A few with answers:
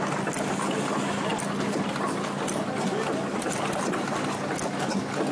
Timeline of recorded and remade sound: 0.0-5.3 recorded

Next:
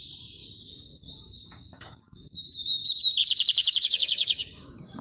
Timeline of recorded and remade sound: 0.0-0.4 recorded; 0.4-2.9 remade; 2.9-3.6 recorded; 3.6-5.0 remade

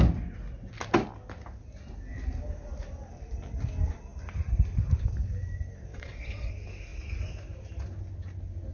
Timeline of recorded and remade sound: 0.0-5.9 recorded; 5.9-6.5 remade; 6.5-8.7 recorded

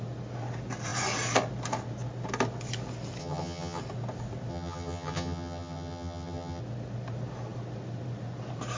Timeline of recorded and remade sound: 0.0-3.2 recorded; 3.2-3.8 remade; 3.8-4.5 recorded; 4.5-6.6 remade; 6.6-8.8 recorded

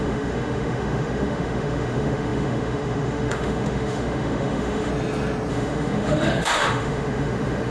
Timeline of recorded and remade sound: 0.0-4.9 remade; 4.9-5.5 recorded; 5.5-7.7 remade

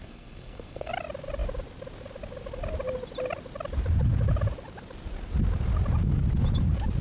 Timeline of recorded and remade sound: 0.0-0.9 remade; 0.9-7.0 recorded

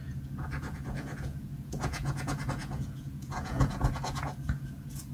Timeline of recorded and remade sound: 0.0-5.1 remade